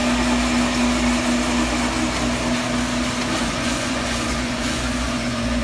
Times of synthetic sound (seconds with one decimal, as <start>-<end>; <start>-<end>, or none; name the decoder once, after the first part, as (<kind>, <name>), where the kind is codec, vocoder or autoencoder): 3.4-5.6 (vocoder, Vocos)